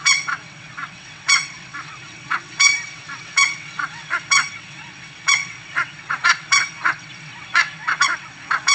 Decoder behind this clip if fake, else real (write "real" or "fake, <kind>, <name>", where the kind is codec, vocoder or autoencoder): fake, vocoder, WaveNeXt